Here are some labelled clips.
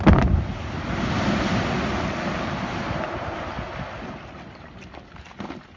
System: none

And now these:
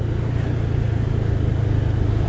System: none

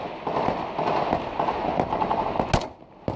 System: none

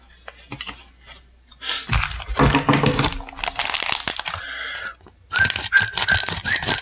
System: none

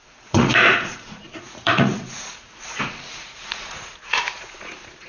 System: vocoder, Vocos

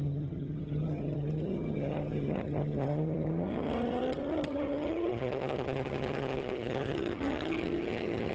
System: vocoder, HiFi-GAN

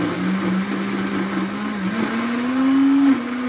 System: none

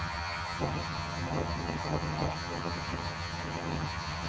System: vocoder, HiFi-GAN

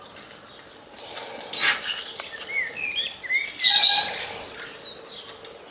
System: none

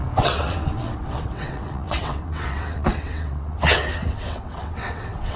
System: vocoder, WaveNeXt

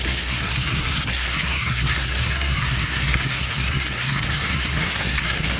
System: codec, SNAC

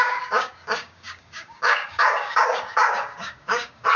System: codec, DAC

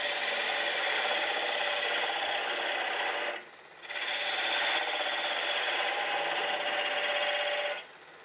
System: none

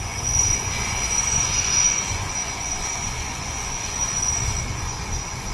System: vocoder, Vocos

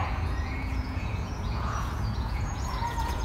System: vocoder, Vocos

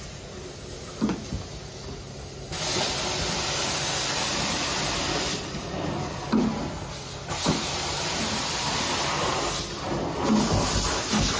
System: none